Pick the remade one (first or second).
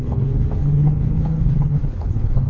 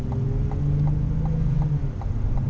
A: first